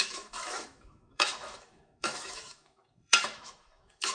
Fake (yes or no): yes